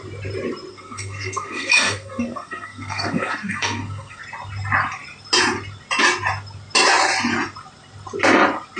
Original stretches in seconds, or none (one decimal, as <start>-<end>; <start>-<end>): 0.0-0.7; 4.2-8.8